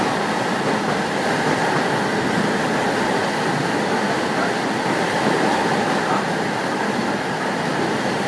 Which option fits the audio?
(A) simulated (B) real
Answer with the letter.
B